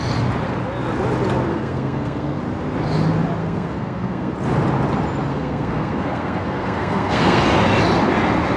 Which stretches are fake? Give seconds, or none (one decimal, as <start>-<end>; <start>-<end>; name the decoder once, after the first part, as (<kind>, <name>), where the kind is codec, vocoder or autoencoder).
1.5-2.4 (codec, SNAC); 3.4-4.3; 5.3-7.4